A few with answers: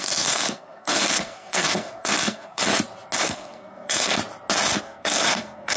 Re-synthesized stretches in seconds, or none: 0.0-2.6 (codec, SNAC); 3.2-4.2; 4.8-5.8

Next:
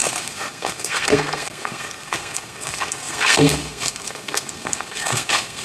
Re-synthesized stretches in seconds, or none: 0.0-5.6 (codec, SNAC)

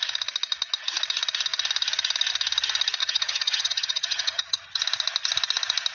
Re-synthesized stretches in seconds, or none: 3.0-4.8 (vocoder, HiFi-GAN)

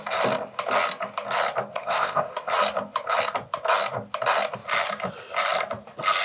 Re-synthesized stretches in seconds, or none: 1.7-2.5 (codec, ZipCodec)

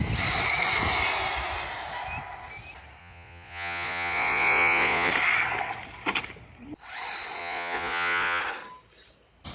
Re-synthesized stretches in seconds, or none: 3.0-5.1 (vocoder, Vocos); 7.4-8.4

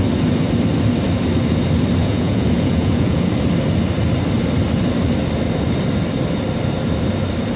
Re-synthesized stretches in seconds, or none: 2.0-3.3 (vocoder, Vocos)